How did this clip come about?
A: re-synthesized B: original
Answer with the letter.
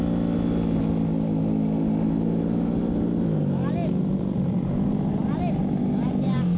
B